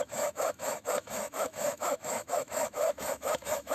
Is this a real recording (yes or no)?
no